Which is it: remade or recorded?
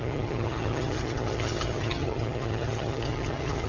remade